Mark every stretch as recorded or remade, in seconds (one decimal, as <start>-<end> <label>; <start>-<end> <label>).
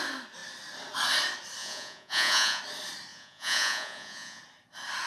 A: 0.0-1.6 recorded; 1.6-2.6 remade; 2.6-3.1 recorded; 3.1-4.4 remade; 4.4-5.1 recorded